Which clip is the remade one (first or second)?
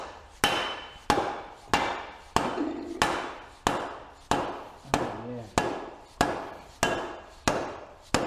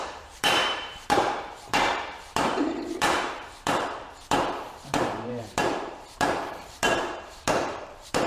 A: second